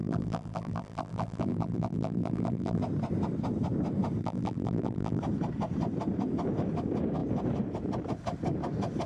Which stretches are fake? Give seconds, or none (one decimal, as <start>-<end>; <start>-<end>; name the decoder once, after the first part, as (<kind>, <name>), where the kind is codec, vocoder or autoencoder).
0.0-2.8 (vocoder, BigVGAN v2); 4.2-5.2